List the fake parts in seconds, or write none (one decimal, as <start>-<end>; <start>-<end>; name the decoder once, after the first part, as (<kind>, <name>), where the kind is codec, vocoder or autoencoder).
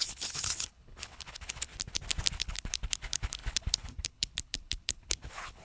0.0-1.7 (codec, HILCodec); 2.3-5.6